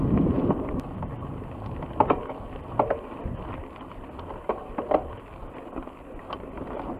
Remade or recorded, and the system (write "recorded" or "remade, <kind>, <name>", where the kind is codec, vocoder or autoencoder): recorded